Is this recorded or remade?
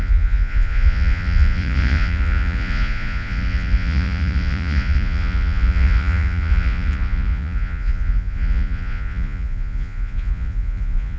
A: remade